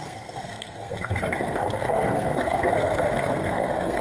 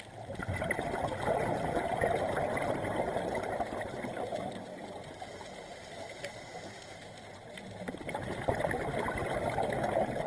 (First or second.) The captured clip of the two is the second